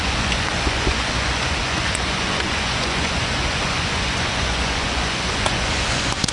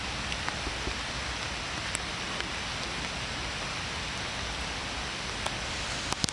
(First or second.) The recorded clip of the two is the second